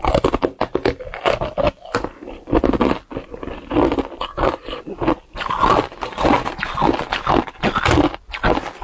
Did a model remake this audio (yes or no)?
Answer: no